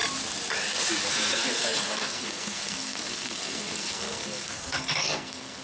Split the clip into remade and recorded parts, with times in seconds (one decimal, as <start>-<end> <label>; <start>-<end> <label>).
0.0-1.1 recorded; 1.1-5.6 remade